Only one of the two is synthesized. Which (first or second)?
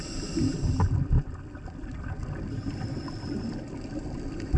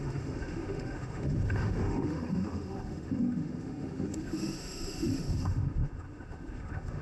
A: second